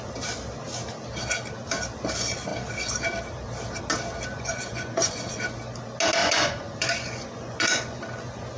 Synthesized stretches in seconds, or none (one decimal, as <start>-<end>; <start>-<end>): 4.3-5.2; 6.2-8.0